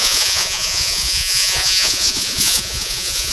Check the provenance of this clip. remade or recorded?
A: remade